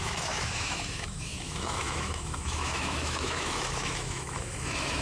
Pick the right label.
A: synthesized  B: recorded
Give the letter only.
A